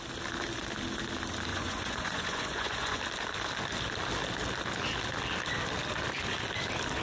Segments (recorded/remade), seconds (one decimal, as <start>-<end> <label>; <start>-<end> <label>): 0.0-1.5 recorded; 1.5-3.0 remade; 3.0-7.0 recorded

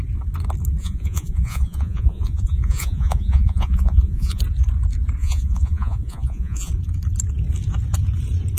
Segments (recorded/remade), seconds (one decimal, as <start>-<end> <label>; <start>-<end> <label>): 0.0-0.8 recorded; 0.8-4.4 remade; 4.4-5.2 recorded; 5.2-6.7 remade; 6.7-8.6 recorded

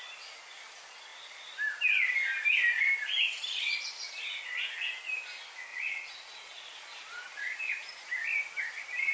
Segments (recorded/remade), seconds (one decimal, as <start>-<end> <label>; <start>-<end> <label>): 0.0-5.7 recorded; 5.7-8.0 remade; 8.0-9.1 recorded